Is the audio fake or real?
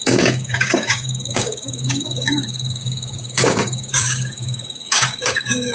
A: fake